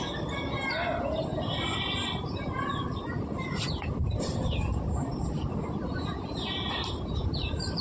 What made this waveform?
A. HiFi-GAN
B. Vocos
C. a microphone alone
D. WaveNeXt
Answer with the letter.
C